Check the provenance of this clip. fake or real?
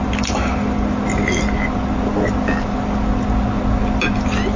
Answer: real